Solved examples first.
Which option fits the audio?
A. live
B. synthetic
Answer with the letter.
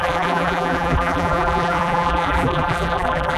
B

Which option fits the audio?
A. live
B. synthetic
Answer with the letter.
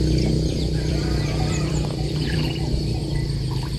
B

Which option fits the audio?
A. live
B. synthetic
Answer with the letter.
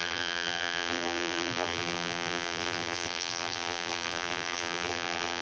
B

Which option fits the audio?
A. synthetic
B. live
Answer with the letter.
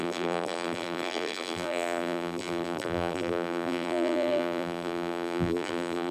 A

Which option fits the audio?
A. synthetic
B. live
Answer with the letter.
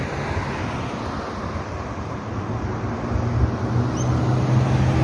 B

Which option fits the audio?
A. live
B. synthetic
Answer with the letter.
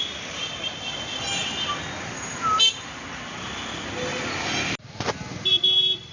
A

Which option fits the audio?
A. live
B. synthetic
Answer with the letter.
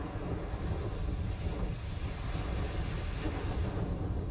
A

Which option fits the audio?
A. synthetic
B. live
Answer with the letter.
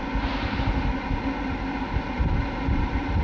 B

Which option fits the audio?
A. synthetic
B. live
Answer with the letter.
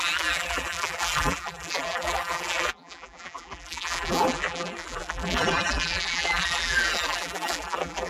A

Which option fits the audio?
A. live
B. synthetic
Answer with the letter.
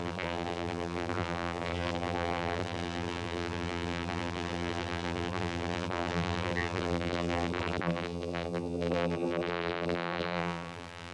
B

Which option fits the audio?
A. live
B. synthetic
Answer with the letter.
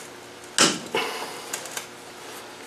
A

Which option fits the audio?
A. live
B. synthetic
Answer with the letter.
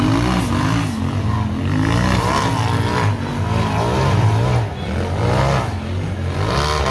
A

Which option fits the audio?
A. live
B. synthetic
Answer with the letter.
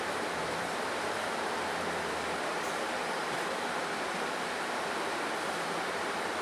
B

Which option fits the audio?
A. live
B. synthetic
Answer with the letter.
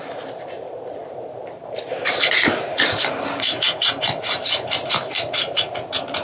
B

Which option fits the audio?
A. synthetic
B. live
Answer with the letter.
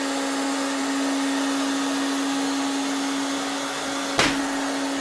B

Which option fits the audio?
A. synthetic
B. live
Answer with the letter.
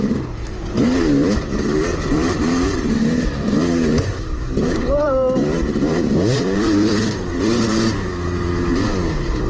A